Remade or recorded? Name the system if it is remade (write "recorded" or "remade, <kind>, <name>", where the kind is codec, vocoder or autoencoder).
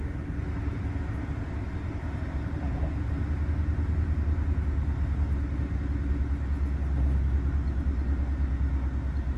recorded